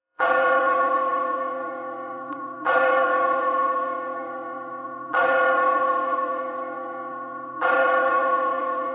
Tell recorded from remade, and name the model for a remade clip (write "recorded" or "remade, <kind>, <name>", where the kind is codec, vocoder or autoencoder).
remade, vocoder, Vocos